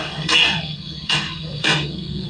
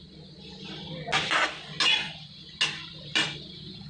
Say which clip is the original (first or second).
second